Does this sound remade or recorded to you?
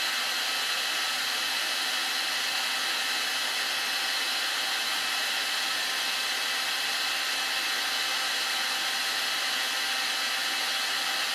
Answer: recorded